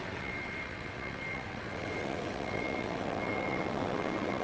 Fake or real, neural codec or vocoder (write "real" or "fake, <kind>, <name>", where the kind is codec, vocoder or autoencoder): fake, vocoder, WaveNeXt